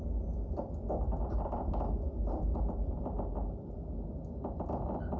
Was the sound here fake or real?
real